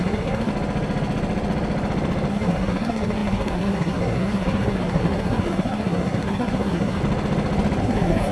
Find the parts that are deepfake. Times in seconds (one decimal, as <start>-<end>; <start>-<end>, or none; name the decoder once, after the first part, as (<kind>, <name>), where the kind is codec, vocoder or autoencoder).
0.0-0.5 (codec, SNAC); 2.3-7.0; 7.8-8.3